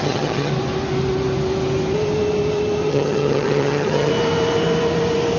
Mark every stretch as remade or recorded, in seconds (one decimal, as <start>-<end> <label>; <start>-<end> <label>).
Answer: 0.0-0.5 remade; 0.5-2.9 recorded; 2.9-4.1 remade; 4.1-5.4 recorded